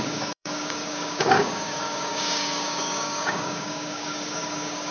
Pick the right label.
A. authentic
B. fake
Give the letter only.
B